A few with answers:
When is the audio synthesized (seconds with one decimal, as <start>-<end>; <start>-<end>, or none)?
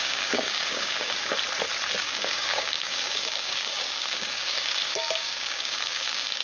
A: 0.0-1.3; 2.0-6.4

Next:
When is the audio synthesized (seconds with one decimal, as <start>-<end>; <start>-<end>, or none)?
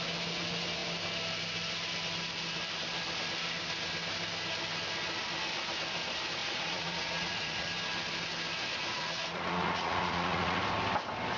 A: 6.4-7.7; 8.9-10.6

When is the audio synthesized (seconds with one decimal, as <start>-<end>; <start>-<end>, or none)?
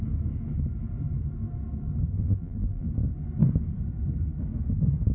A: 2.1-2.9